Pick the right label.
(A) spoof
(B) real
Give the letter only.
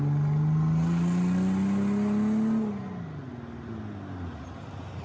B